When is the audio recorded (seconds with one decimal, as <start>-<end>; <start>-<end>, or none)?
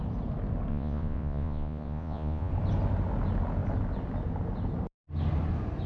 0.0-0.7; 2.5-5.9